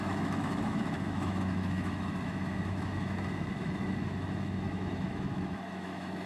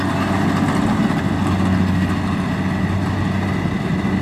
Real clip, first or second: second